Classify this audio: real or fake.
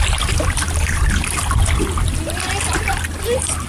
fake